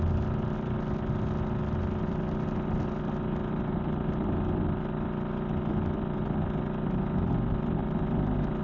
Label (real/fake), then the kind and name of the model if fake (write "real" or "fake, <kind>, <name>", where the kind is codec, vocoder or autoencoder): real